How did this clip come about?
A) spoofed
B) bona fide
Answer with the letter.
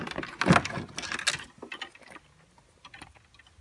B